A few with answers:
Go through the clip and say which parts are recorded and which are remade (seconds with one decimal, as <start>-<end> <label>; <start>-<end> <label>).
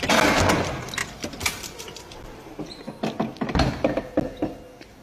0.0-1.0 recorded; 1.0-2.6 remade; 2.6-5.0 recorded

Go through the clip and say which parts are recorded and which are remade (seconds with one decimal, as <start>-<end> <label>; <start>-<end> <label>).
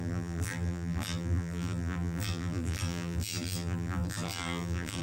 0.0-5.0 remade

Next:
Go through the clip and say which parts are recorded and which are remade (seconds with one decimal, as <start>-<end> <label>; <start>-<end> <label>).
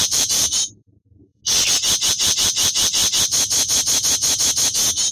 0.0-1.4 remade; 1.4-2.1 recorded; 2.1-3.0 remade; 3.0-5.1 recorded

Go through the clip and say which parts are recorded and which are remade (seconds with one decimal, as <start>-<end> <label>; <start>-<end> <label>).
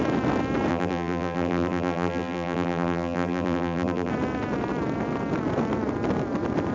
0.0-0.7 recorded; 0.7-4.1 remade; 4.1-6.7 recorded